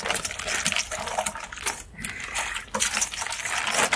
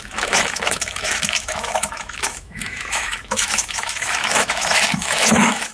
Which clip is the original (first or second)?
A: first